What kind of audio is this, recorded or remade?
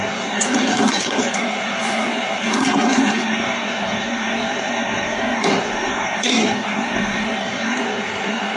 remade